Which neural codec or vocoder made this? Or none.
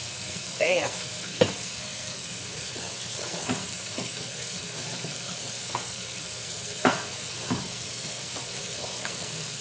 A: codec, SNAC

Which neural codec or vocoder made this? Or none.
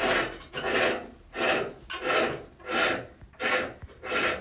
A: none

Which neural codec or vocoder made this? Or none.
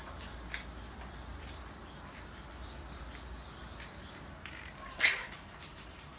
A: none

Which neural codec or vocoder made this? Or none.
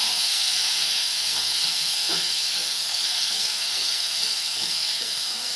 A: codec, SNAC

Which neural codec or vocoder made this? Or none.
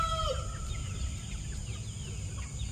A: none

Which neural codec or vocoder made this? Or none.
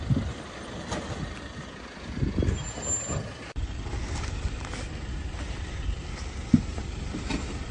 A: none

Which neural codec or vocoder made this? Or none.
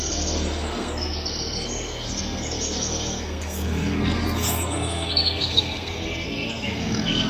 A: codec, SNAC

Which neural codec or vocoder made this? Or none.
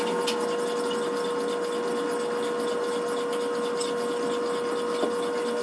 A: none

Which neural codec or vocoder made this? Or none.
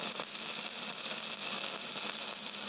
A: none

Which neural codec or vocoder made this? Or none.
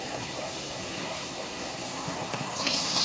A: codec, SNAC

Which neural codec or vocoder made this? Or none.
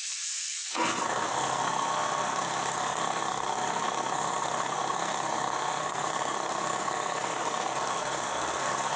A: codec, SNAC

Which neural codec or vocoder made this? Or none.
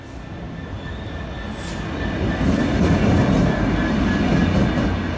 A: none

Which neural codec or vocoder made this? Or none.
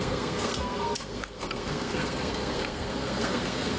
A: codec, SNAC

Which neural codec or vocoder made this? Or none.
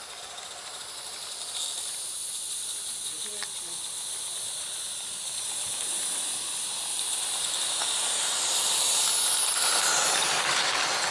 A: none